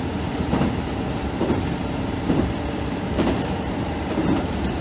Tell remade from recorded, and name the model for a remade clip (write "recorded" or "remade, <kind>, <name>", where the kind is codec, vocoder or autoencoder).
remade, vocoder, BigVGAN v2